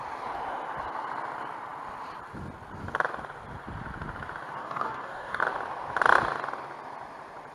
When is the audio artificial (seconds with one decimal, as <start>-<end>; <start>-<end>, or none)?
4.6-5.4